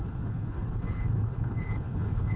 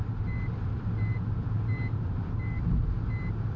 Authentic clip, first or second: second